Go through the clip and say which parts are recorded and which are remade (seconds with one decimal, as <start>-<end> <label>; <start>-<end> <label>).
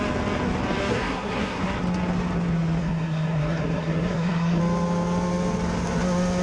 0.0-0.9 recorded; 0.9-1.6 remade; 1.6-2.8 recorded; 2.8-4.6 remade; 4.6-6.4 recorded